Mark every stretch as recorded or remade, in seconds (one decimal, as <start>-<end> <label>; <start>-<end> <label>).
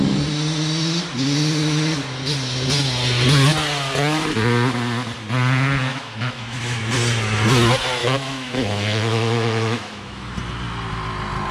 0.0-5.9 recorded; 5.9-6.8 remade; 6.8-8.0 recorded; 8.0-10.3 remade; 10.3-11.5 recorded